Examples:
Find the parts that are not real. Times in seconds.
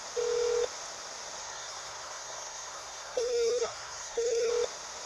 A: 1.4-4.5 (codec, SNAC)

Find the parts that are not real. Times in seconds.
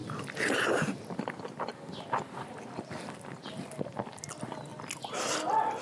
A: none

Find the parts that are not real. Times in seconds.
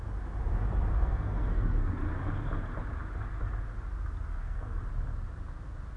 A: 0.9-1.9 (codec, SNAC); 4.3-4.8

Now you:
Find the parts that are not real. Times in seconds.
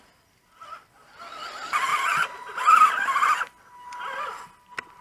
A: none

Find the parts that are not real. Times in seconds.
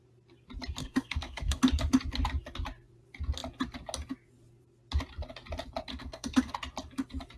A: 0.8-1.6 (codec, SNAC); 5.9-6.5